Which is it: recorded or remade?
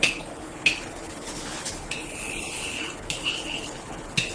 remade